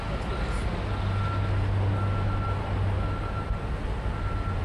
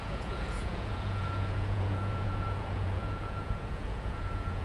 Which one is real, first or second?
first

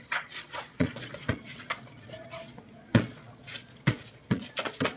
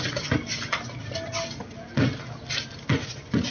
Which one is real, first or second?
second